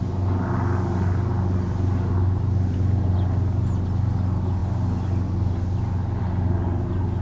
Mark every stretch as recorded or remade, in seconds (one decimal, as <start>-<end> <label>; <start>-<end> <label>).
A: 0.0-7.2 recorded